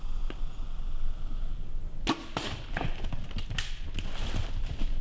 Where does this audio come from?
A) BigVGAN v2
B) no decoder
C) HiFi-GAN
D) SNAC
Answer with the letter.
B